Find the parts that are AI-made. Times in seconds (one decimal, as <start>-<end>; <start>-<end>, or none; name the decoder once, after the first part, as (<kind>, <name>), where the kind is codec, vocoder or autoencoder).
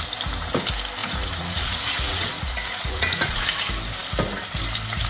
1.0-3.4 (vocoder, Vocos)